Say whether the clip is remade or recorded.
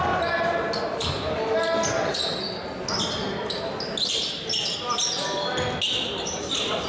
recorded